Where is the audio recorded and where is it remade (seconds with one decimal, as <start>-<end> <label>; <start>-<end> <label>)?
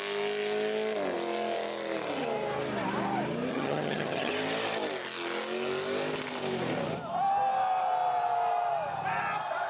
0.0-3.5 recorded; 3.5-4.3 remade; 4.3-9.7 recorded